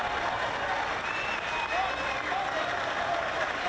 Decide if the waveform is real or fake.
real